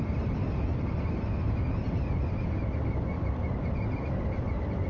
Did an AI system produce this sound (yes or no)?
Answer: no